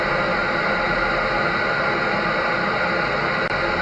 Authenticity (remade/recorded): recorded